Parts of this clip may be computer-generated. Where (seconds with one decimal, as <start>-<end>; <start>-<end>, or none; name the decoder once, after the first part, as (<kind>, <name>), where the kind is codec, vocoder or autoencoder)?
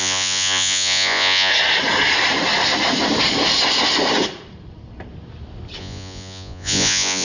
0.0-1.5 (vocoder, Vocos); 5.8-7.2